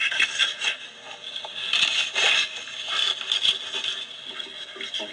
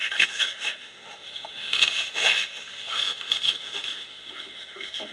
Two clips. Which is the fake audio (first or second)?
second